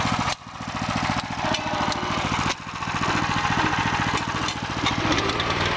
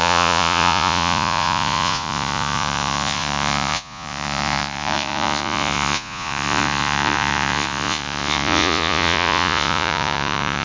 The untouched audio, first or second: first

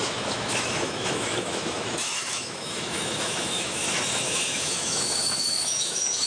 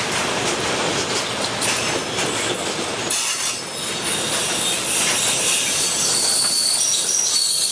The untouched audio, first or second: second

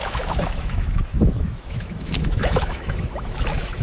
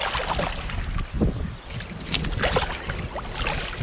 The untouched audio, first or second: second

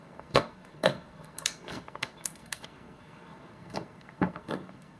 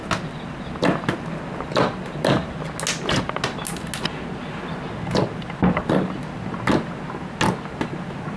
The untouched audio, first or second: second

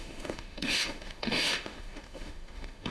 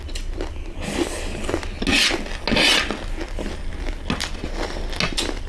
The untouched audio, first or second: second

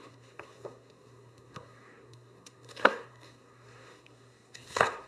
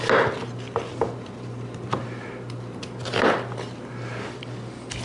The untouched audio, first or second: second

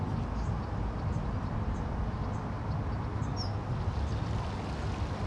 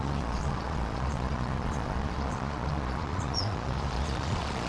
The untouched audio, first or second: first